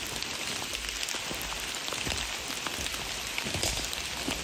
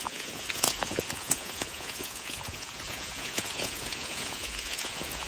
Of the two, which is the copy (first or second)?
second